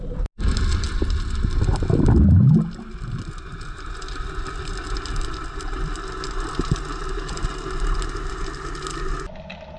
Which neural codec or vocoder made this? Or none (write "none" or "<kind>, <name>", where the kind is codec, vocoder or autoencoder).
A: none